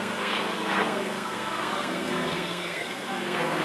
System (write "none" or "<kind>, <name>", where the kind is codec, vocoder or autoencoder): codec, SNAC